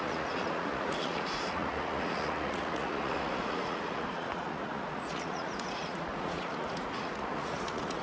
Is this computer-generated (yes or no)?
yes